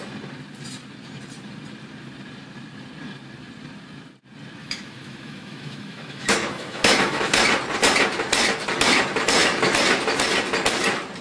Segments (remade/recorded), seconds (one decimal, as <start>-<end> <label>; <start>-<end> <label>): 0.0-4.6 recorded; 4.6-7.3 remade; 7.3-11.2 recorded